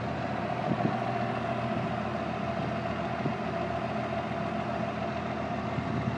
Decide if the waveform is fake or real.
real